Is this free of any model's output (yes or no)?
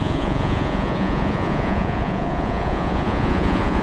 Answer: no